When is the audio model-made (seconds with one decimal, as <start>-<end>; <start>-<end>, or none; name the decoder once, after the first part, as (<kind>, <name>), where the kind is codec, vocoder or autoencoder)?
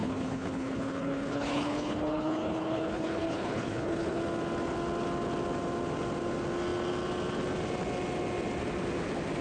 0.0-4.2 (codec, HILCodec)